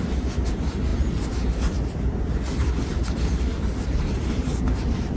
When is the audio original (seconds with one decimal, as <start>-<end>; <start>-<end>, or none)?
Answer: 0.0-5.2